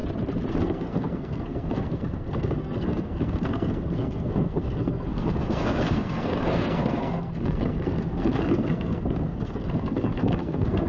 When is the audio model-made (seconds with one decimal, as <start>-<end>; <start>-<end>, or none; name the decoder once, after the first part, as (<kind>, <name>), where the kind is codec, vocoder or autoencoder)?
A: 0.5-10.9 (codec, SNAC)